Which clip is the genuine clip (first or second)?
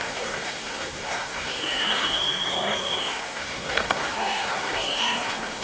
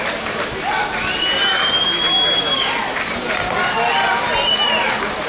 second